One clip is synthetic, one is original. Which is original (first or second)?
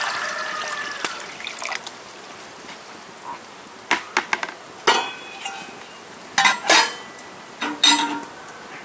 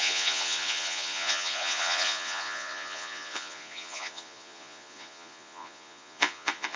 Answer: first